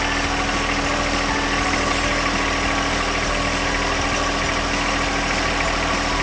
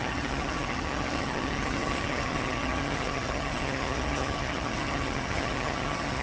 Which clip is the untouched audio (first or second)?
first